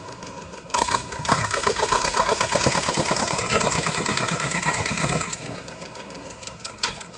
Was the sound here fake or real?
fake